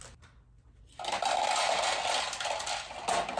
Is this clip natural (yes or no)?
yes